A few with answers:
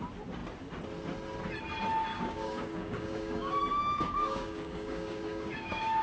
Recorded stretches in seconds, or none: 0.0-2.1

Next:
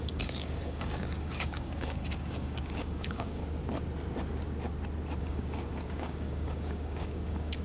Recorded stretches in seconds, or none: 3.4-5.2

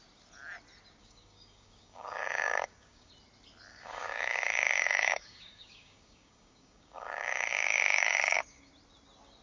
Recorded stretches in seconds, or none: 0.0-1.0; 3.1-3.7; 8.7-9.4

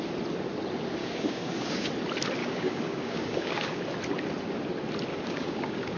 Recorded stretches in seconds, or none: 0.0-1.0; 1.9-2.4; 3.8-5.1

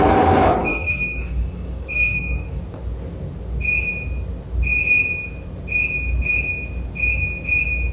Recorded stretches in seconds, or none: 0.0-0.6; 2.6-7.9